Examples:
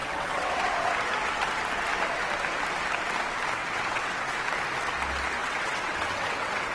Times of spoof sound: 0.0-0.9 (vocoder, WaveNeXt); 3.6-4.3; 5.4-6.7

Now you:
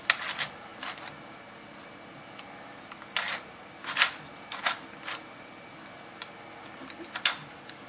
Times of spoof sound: none

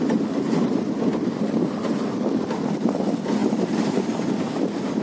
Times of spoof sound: none

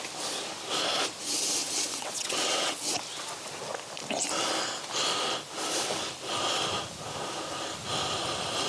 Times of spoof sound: 1.6-2.9 (vocoder, WaveNeXt)